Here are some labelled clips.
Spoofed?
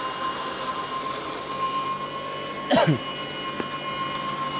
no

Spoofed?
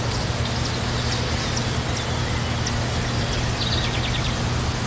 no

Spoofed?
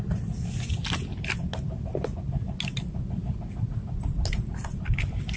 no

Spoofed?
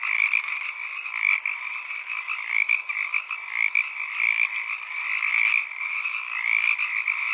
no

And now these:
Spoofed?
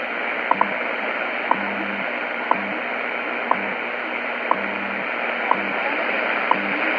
no